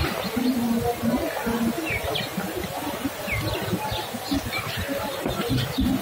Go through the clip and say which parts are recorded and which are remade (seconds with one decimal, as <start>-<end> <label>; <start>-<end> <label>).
0.0-6.0 recorded